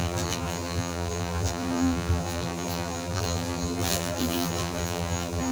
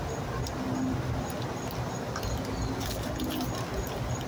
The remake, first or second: first